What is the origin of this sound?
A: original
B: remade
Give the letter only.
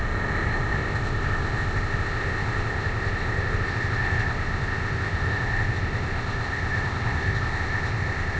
B